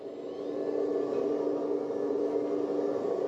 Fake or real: real